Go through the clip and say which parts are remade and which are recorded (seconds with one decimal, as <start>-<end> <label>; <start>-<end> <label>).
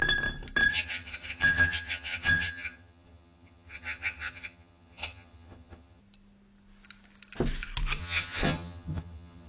0.0-0.7 recorded; 0.7-6.0 remade; 6.0-8.0 recorded; 8.0-9.5 remade